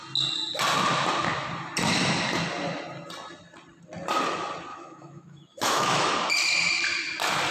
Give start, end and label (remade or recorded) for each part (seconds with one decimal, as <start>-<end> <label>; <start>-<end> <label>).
0.0-4.7 recorded; 4.7-6.1 remade; 6.1-7.5 recorded